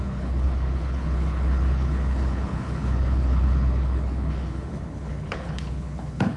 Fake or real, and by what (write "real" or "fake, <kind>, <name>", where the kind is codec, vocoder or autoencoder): fake, codec, HILCodec